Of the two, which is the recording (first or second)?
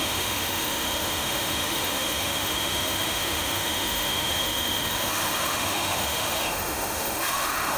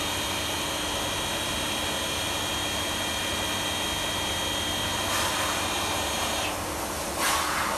second